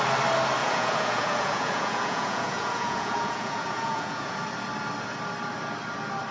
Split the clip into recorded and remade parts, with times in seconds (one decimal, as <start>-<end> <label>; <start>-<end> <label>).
0.0-0.6 recorded; 0.6-4.4 remade; 4.4-6.3 recorded